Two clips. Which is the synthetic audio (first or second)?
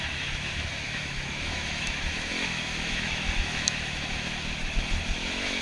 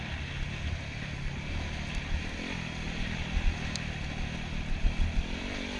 first